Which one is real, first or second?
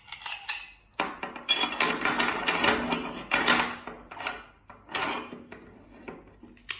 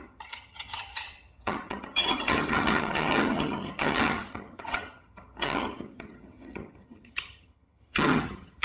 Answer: first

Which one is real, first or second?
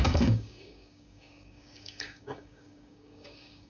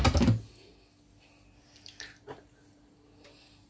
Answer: second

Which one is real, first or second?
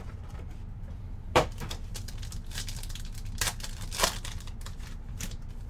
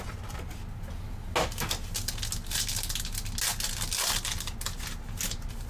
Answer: second